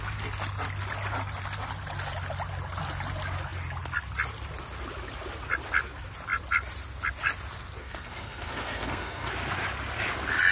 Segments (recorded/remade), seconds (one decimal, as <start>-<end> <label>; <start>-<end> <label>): 0.0-7.8 recorded; 7.8-9.3 remade; 9.3-10.5 recorded